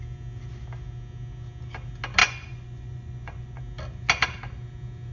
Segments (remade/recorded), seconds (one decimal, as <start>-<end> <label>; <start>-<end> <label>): 0.0-2.2 recorded; 2.2-3.6 remade; 3.6-5.1 recorded